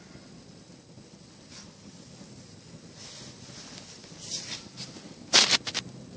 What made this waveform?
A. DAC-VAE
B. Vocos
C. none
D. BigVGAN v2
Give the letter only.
C